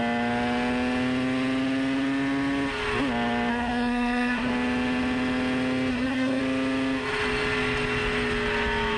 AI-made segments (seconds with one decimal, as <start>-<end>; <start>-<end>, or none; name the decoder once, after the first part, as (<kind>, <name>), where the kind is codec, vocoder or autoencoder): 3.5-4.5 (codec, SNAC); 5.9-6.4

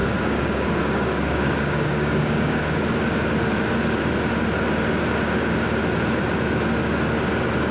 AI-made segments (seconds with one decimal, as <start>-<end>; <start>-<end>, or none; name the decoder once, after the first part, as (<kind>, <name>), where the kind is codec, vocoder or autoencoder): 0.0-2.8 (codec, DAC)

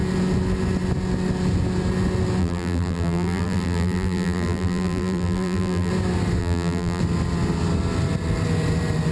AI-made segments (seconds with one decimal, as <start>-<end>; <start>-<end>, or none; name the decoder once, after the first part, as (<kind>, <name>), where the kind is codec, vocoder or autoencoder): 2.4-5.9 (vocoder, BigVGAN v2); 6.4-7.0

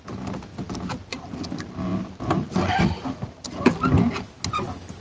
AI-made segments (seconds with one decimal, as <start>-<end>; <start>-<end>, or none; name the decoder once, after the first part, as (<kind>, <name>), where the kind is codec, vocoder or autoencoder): none

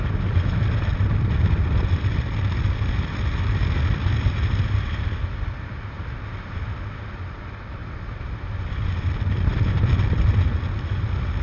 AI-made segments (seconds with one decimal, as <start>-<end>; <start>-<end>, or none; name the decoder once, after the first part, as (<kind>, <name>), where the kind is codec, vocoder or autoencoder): none